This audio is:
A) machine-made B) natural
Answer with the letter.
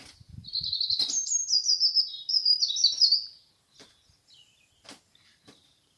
B